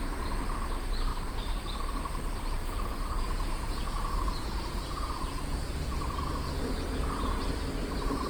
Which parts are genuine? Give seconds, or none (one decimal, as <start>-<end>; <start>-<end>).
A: 0.0-2.6; 7.4-8.3